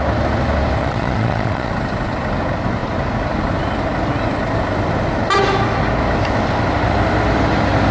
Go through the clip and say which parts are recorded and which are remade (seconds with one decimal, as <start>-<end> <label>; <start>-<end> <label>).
0.0-0.8 recorded; 0.8-1.7 remade; 1.7-7.9 recorded